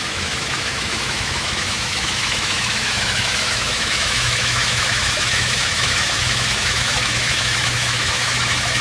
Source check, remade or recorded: remade